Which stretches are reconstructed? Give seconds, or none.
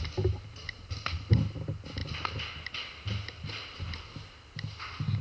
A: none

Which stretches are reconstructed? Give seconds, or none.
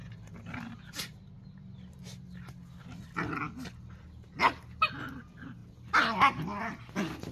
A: none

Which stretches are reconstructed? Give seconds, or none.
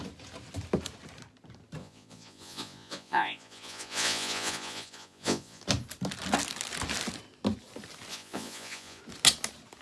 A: 1.8-5.6 (vocoder, Vocos); 8.1-9.0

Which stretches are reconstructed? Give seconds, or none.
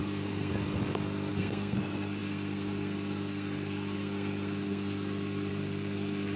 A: 0.0-0.5 (codec, SNAC); 1.3-6.4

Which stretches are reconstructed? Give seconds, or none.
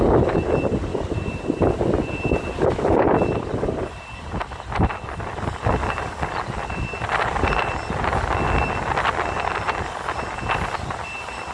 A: none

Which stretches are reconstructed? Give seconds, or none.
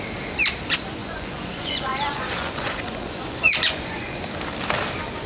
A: 1.0-4.2 (vocoder, Vocos)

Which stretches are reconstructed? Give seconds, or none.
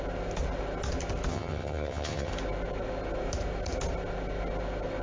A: 1.3-2.3 (vocoder, HiFi-GAN)